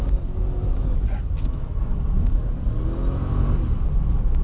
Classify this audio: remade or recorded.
recorded